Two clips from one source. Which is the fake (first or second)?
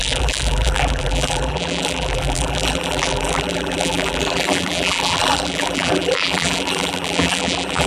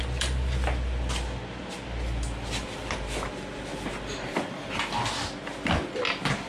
first